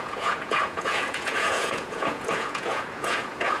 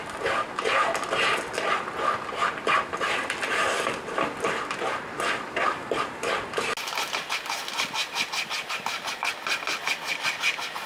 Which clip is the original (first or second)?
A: second